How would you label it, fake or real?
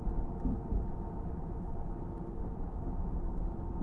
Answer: real